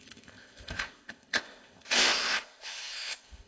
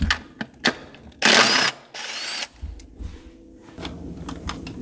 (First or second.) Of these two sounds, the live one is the second